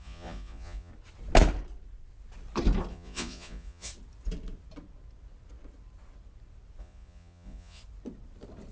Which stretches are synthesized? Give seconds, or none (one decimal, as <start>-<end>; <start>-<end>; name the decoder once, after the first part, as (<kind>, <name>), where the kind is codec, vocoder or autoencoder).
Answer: 0.0-0.9 (vocoder, Vocos); 2.9-3.9; 6.8-7.8